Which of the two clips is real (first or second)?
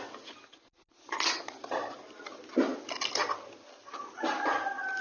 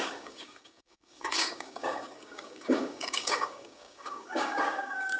first